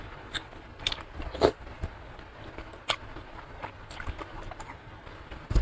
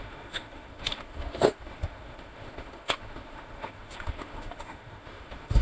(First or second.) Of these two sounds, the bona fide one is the first